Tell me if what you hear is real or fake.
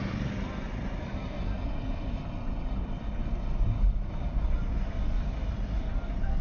real